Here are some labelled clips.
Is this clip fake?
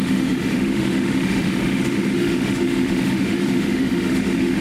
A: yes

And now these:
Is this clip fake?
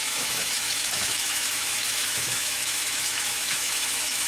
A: yes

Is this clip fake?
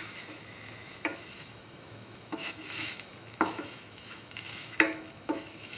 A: yes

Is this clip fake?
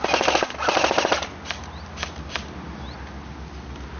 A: no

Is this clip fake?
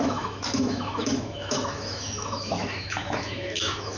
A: yes